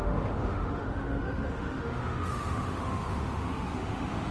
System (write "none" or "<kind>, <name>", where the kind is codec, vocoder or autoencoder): autoencoder, DAC-VAE